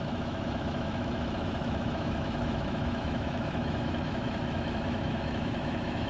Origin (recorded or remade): remade